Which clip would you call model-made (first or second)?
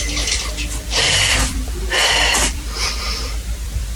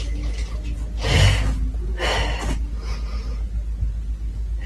first